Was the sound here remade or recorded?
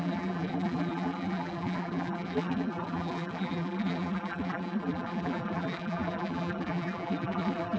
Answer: remade